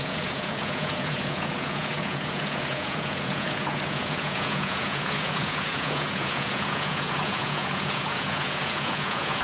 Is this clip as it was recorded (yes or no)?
no